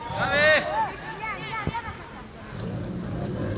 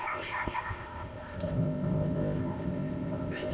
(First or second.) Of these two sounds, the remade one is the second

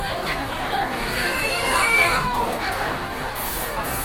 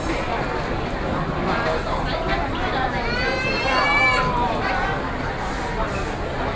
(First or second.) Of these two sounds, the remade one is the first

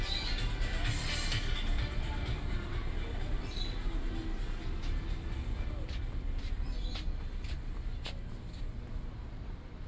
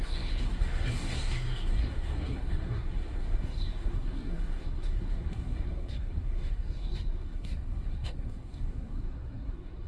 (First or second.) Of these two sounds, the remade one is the second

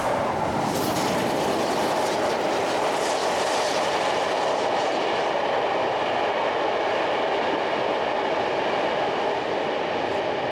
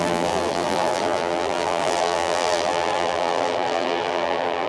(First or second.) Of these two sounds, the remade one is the second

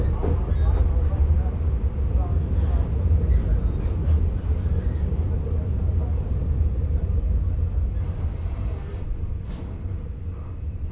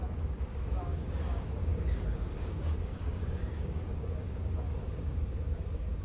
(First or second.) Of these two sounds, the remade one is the second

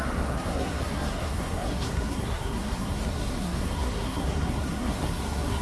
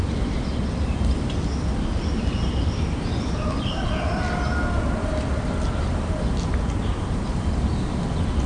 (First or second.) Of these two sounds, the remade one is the first